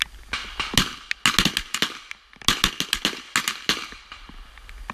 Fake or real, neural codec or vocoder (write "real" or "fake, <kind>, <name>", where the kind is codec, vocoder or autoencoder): real